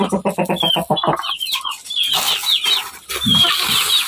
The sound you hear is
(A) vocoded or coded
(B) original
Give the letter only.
B